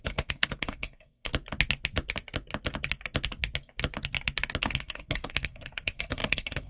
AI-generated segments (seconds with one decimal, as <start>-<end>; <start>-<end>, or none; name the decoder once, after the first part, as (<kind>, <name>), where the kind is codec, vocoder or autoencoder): 0.0-1.3 (codec, SNAC); 4.6-6.7